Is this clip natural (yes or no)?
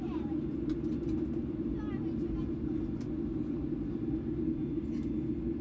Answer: yes